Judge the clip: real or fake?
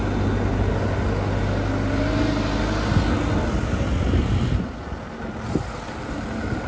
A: real